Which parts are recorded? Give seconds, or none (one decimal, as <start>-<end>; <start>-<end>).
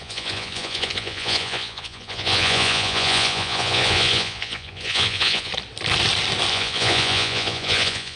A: 5.5-6.5